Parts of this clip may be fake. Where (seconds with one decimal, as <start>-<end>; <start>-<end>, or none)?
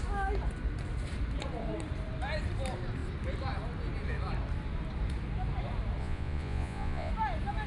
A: 6.0-7.1